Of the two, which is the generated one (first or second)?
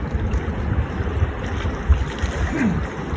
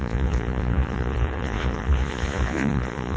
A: second